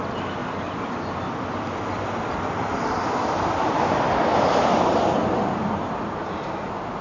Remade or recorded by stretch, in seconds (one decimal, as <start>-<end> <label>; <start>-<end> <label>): 0.0-7.0 recorded